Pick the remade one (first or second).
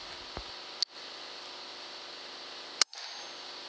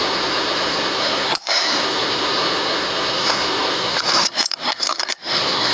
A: second